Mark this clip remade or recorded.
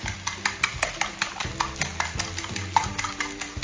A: recorded